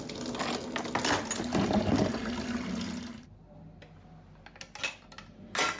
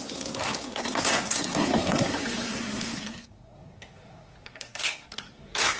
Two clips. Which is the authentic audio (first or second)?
first